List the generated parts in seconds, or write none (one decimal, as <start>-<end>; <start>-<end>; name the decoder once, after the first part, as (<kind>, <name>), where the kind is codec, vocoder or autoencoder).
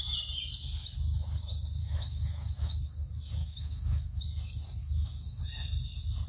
1.8-2.9 (autoencoder, DAC-VAE); 3.4-4.2; 4.8-5.4